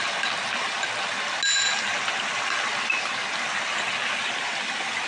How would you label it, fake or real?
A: real